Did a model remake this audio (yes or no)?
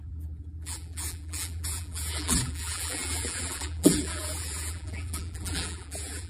yes